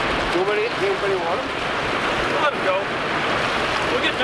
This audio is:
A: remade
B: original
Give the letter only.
B